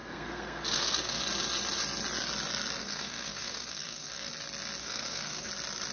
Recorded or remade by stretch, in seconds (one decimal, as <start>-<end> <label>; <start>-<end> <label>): 0.0-1.2 remade; 1.2-2.8 recorded; 2.8-4.3 remade; 4.3-4.8 recorded; 4.8-5.5 remade; 5.5-5.9 recorded